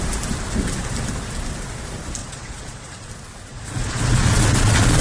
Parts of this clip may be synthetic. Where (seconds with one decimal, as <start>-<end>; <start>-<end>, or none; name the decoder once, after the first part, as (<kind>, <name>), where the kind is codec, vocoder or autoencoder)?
2.2-3.1 (vocoder, Vocos); 3.5-5.0